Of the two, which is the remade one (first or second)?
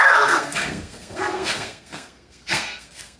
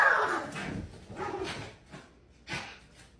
first